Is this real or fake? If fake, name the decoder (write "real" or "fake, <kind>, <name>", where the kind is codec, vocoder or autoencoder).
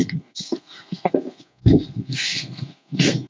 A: fake, codec, SNAC